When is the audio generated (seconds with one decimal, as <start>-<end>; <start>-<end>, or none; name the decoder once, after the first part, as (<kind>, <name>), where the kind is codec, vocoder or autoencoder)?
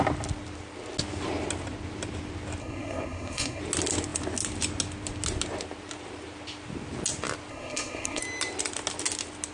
2.6-3.6 (codec, SNAC); 7.5-8.2